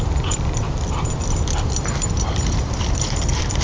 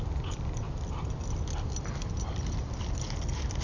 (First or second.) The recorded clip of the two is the second